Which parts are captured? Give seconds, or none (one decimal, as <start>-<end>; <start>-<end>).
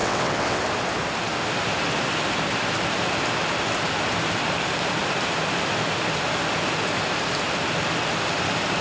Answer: 0.6-8.8